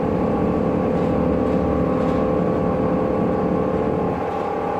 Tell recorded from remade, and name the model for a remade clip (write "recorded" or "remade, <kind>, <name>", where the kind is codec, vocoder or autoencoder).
recorded